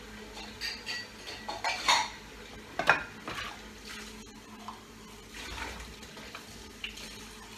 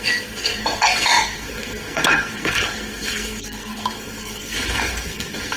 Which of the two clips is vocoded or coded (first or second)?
second